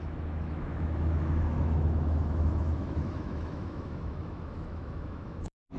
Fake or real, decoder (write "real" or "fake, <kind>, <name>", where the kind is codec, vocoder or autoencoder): fake, autoencoder, DAC-VAE